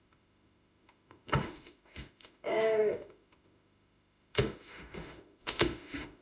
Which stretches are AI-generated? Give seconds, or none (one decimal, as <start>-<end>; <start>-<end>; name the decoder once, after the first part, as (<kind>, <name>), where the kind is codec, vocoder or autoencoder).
0.0-6.2 (autoencoder, DAC-VAE)